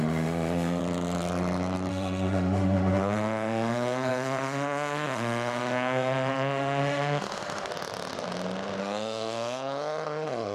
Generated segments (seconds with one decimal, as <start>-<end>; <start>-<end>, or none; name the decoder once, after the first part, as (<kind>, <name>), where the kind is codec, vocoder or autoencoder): 0.0-0.8 (autoencoder, DAC-VAE); 1.9-7.7; 8.8-10.5